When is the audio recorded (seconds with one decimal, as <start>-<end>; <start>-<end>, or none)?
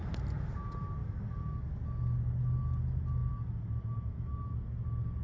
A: 0.0-1.0; 1.8-5.2